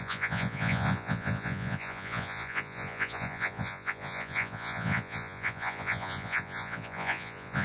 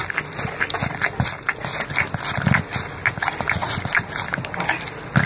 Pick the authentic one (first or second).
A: second